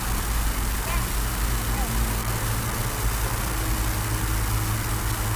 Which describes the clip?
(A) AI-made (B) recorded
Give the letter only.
B